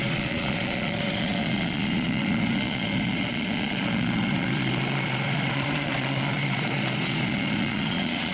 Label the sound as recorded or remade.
remade